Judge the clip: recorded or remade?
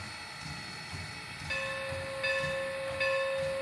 recorded